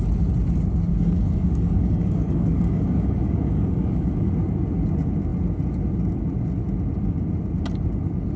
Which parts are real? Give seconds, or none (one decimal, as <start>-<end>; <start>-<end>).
0.0-0.9; 4.3-8.4